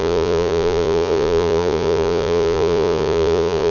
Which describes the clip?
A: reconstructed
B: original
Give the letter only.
A